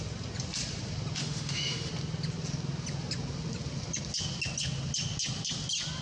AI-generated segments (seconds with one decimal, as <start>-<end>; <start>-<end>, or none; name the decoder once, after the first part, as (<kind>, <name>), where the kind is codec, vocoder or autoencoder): 1.2-1.9 (autoencoder, DAC-VAE)